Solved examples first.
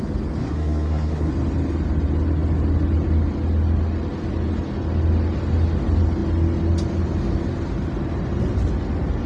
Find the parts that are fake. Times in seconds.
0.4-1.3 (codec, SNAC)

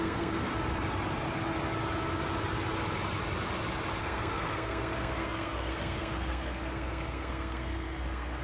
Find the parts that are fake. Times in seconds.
0.0-0.5 (codec, SNAC); 4.0-8.4